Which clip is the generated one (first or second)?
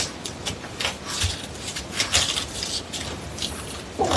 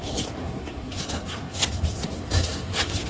second